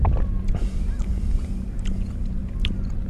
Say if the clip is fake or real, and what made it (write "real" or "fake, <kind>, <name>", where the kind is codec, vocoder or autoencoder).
real